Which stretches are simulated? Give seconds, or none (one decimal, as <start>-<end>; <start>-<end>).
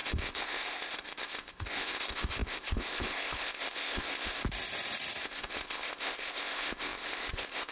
0.0-4.4; 5.2-7.7